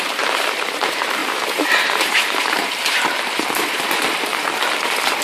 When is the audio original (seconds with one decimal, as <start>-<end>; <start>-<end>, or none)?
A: 4.3-5.2